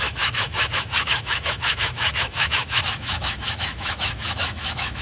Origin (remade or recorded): remade